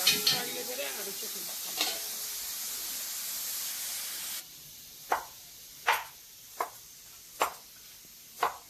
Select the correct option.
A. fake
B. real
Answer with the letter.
B